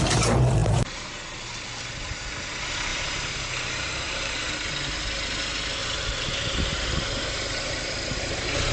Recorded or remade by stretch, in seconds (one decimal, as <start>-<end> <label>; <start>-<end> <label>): 0.0-0.6 recorded; 0.6-1.1 remade; 1.1-2.9 recorded; 2.9-4.5 remade; 4.5-5.8 recorded; 5.8-8.7 remade